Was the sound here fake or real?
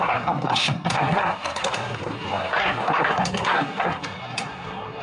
fake